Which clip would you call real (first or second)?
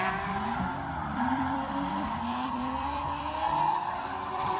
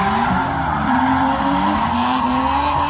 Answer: second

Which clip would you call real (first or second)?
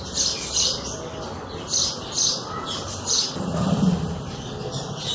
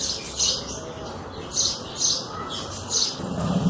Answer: second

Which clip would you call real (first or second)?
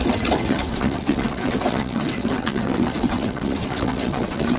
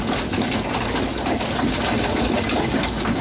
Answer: second